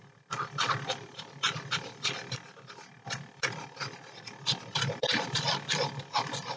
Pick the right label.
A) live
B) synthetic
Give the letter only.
A